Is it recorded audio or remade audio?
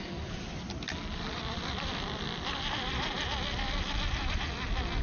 recorded